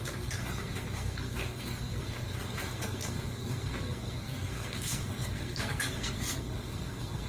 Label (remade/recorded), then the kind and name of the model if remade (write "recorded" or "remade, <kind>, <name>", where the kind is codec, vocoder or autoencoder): remade, codec, SNAC